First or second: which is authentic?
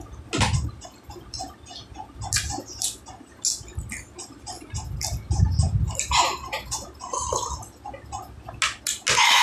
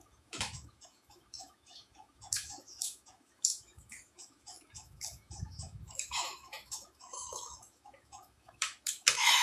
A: first